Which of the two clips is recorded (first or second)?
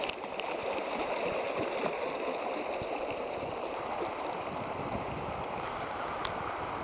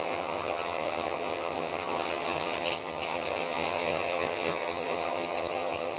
first